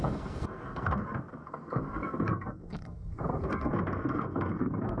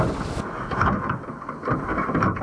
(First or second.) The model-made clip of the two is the first